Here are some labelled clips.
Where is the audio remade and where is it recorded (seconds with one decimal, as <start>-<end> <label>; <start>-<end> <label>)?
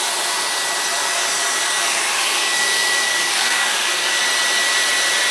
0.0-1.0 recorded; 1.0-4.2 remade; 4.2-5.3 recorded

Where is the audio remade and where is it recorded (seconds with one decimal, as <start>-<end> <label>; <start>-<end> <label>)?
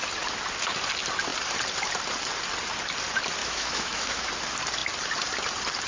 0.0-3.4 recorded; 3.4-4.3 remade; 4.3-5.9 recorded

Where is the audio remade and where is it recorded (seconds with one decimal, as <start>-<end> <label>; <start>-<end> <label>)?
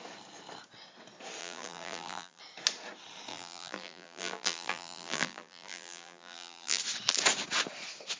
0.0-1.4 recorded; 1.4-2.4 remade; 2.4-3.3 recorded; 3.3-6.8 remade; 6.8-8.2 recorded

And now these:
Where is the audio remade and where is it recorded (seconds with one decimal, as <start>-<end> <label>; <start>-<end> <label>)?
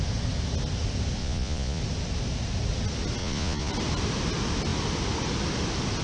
0.0-1.2 recorded; 1.2-1.8 remade; 1.8-3.2 recorded; 3.2-3.7 remade; 3.7-6.0 recorded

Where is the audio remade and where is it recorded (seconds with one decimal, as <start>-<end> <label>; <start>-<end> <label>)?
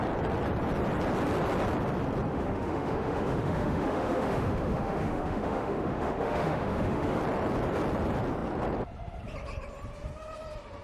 0.0-2.3 recorded; 2.3-7.2 remade; 7.2-10.8 recorded